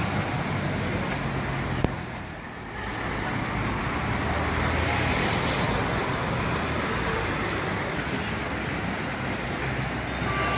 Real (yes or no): yes